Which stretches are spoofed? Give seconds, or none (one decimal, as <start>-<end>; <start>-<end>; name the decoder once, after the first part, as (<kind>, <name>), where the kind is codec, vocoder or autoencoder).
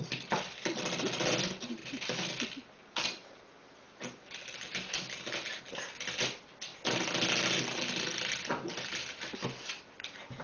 none